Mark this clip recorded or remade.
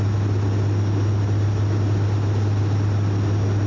recorded